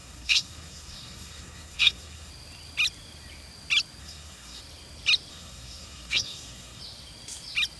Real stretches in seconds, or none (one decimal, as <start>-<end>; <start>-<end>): 2.3-4.0; 4.6-5.3; 6.8-7.8